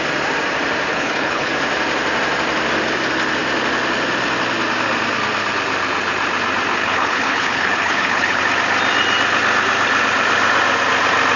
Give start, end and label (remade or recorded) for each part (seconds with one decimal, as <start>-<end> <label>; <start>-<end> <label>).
0.0-0.9 recorded; 0.9-1.5 remade; 1.5-6.8 recorded; 6.8-8.4 remade; 8.4-11.4 recorded